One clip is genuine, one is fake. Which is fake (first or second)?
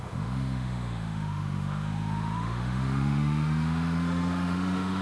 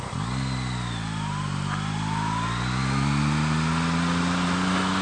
first